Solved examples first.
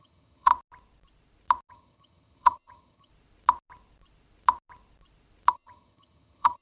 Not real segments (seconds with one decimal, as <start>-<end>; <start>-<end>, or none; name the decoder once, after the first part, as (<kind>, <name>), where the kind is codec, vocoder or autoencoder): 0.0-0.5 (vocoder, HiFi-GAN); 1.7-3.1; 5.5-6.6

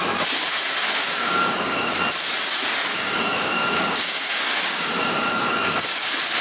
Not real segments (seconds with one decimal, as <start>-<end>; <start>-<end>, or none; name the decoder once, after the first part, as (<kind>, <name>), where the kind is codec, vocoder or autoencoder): 0.8-2.0 (codec, DAC); 2.8-5.9

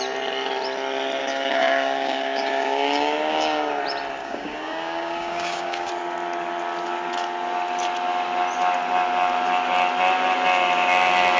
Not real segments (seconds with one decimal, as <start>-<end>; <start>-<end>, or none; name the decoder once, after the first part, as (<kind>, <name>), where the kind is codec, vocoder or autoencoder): 1.2-3.8 (codec, DAC); 4.2-5.9